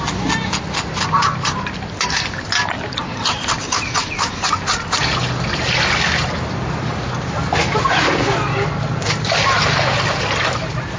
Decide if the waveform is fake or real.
real